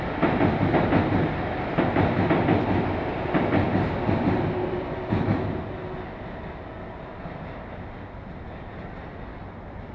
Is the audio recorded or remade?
recorded